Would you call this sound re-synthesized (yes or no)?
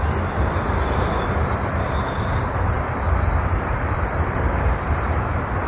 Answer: yes